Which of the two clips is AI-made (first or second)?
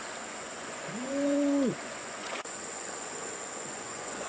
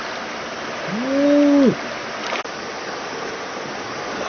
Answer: first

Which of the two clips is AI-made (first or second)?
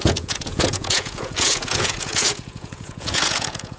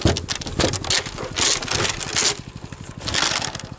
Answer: first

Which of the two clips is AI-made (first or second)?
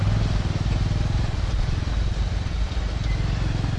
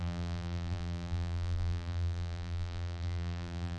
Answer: second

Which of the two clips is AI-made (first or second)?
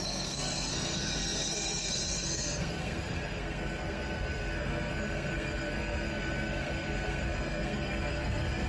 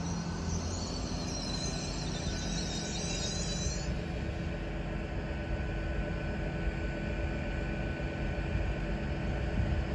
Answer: first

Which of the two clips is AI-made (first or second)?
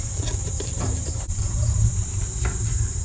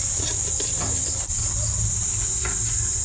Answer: first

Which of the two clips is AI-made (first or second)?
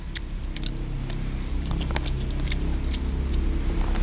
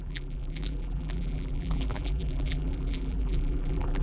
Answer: second